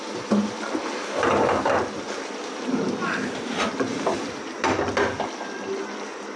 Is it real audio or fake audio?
real